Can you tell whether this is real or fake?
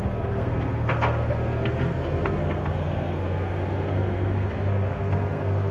fake